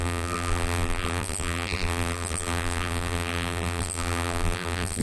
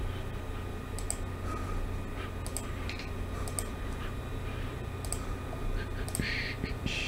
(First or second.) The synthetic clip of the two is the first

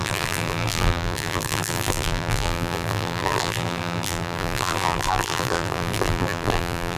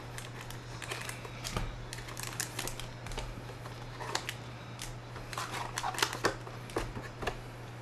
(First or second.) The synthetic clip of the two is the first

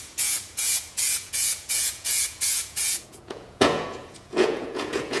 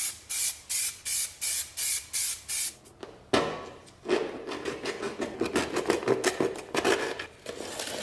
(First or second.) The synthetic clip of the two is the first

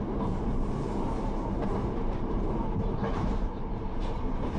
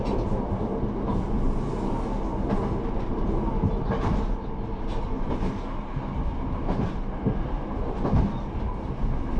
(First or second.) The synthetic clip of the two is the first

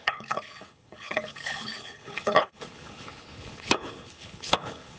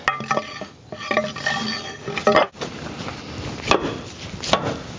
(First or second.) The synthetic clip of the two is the first